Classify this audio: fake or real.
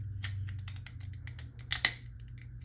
real